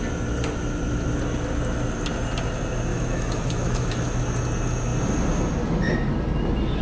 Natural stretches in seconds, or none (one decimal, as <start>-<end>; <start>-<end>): 0.0-2.9; 4.2-6.8